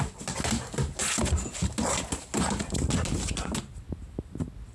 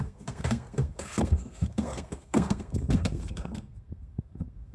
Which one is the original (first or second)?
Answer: first